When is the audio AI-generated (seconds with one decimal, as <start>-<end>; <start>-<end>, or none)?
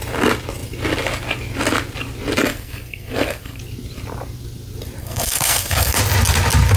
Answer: 2.4-3.6; 5.0-6.0